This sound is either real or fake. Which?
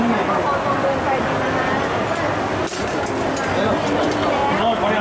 real